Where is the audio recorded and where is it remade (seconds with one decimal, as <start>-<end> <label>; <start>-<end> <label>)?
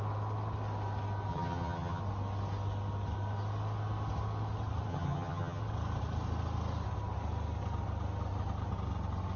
0.0-1.3 recorded; 1.3-2.0 remade; 2.0-4.9 recorded; 4.9-5.6 remade; 5.6-9.4 recorded